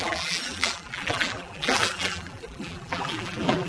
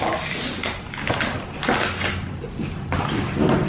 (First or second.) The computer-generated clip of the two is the first